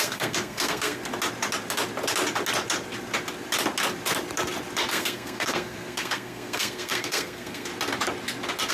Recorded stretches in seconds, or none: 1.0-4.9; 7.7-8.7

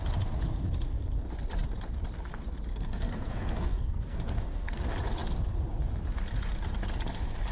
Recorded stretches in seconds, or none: 0.0-2.7; 4.8-7.5

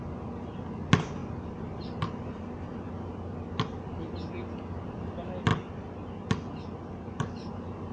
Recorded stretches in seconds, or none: 0.0-7.9

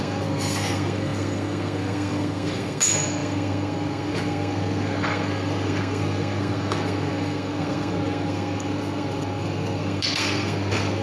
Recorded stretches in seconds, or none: none

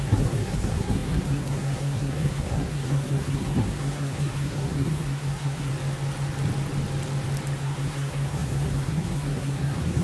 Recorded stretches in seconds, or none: 5.7-7.6

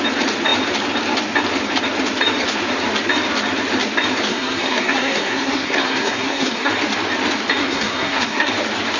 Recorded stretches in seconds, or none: 0.0-4.3; 6.7-7.6; 8.5-9.0

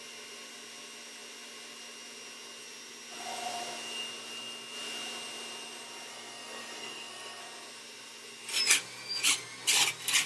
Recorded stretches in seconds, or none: 0.0-6.1; 7.4-10.3

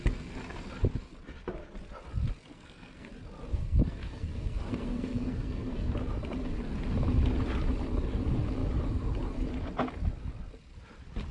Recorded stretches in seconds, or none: 0.0-2.5; 3.1-3.5; 5.9-11.3